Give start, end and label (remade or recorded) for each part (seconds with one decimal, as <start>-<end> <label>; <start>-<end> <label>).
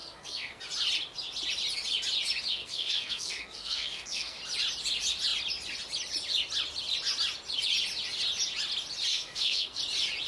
0.0-0.6 remade; 0.6-2.5 recorded; 2.5-4.4 remade; 4.4-9.1 recorded; 9.1-9.8 remade; 9.8-10.3 recorded